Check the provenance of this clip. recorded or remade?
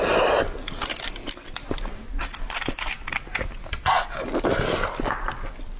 recorded